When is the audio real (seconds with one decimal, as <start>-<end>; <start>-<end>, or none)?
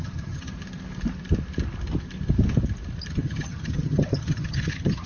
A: 0.5-3.1